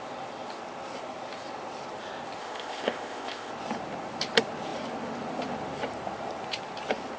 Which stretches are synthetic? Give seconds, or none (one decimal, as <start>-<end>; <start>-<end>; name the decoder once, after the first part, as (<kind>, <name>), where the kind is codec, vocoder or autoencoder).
2.4-3.5 (codec, ZipCodec)